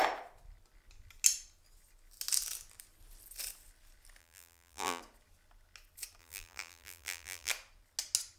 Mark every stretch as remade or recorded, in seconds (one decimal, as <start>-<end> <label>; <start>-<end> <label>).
0.0-4.2 recorded; 4.2-5.0 remade; 5.0-6.2 recorded; 6.2-7.5 remade; 7.5-8.4 recorded